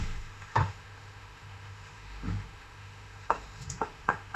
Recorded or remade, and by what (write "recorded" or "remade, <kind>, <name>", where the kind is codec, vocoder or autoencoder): remade, autoencoder, DAC-VAE